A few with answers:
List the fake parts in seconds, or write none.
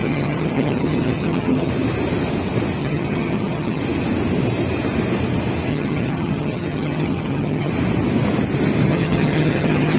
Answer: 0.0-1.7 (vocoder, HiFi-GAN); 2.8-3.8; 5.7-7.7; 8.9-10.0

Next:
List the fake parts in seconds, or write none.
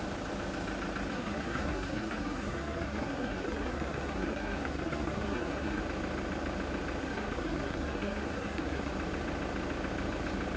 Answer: 1.1-5.8 (codec, SNAC); 7.0-8.9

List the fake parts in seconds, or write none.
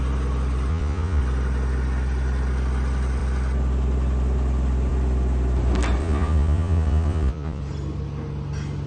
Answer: 0.7-1.2 (vocoder, Vocos); 6.0-7.6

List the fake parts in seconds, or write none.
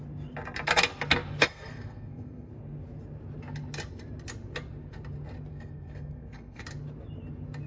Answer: 1.4-2.5 (codec, SNAC); 5.5-6.6